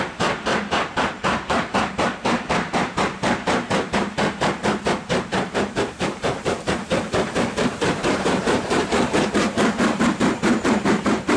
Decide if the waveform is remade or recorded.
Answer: remade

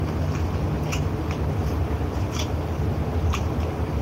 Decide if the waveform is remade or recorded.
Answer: recorded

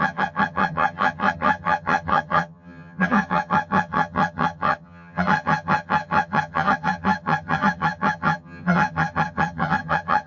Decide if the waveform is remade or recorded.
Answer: remade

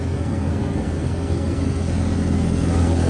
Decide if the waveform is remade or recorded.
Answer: remade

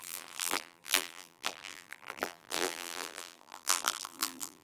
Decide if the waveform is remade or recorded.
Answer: remade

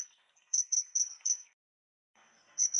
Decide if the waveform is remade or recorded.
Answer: remade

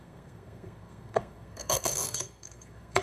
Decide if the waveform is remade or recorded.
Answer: remade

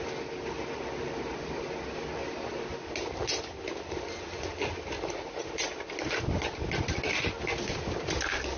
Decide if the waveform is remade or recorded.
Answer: recorded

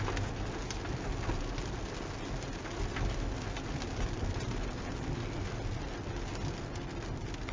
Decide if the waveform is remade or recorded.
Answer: recorded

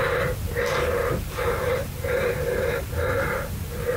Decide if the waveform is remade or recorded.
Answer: recorded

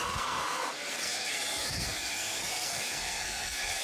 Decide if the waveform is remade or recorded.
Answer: remade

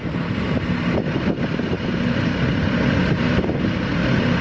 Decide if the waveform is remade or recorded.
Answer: recorded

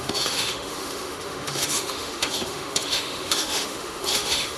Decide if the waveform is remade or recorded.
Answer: remade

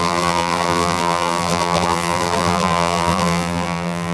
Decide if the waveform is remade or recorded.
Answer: remade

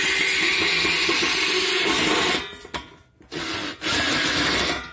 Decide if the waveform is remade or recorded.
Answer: recorded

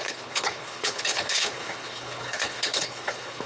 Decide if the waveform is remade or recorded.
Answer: remade